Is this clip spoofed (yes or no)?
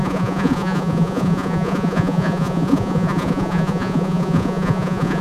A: yes